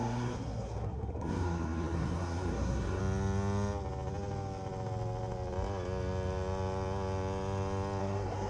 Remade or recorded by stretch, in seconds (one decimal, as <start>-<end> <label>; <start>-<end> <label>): 0.0-3.0 remade; 3.0-8.0 recorded; 8.0-8.5 remade